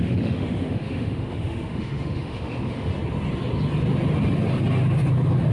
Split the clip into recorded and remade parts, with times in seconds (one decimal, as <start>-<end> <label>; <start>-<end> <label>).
0.0-2.9 remade; 2.9-5.5 recorded